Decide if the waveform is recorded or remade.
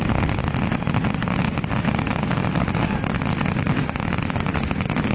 recorded